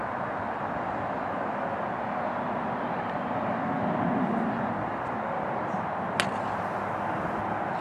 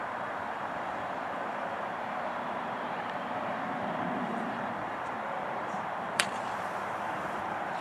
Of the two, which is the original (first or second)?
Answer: first